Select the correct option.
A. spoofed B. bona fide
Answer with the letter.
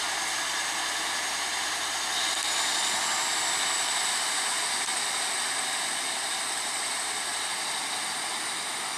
B